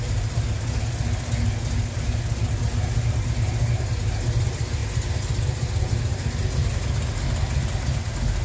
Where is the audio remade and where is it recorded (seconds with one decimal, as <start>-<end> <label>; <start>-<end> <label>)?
0.0-4.8 recorded; 4.8-5.9 remade; 5.9-8.4 recorded